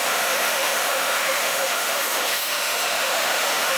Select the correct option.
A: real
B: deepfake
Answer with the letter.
B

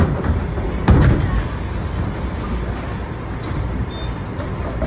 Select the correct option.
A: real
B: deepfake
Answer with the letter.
A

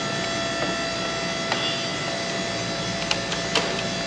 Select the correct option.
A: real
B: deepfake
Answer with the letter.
A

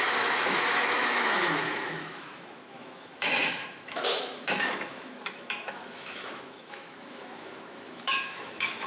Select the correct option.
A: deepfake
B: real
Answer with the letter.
A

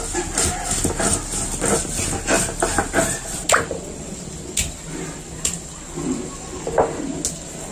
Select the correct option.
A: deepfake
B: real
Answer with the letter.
B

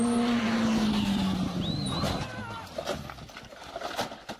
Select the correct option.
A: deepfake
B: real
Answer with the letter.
B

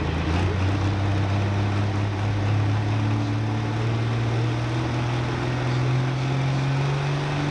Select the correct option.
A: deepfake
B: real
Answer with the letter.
B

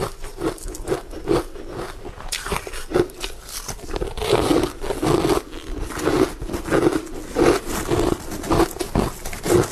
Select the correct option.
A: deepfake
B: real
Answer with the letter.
B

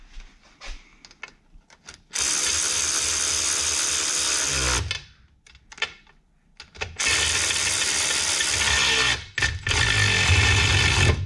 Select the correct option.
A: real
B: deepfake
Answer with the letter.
A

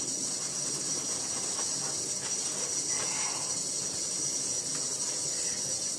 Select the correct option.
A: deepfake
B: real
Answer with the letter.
B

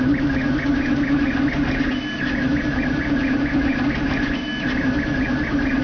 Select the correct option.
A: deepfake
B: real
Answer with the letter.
B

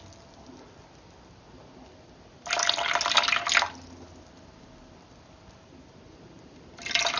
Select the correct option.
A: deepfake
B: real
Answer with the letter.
B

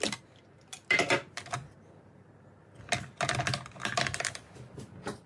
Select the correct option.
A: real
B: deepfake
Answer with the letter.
A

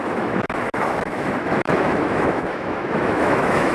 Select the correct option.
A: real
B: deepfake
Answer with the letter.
B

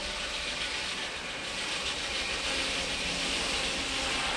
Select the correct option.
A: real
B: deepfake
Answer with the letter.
A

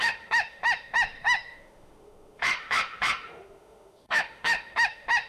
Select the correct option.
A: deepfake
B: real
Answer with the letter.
A